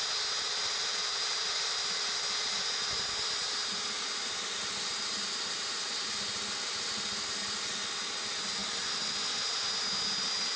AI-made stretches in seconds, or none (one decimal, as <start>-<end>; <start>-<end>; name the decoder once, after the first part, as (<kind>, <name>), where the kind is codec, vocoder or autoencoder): none